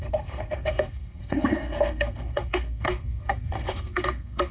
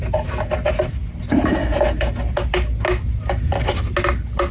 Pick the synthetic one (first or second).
first